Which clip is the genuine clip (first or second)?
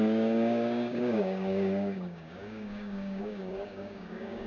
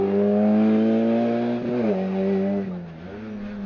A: second